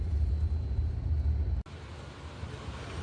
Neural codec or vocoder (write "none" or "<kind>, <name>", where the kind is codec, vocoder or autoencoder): none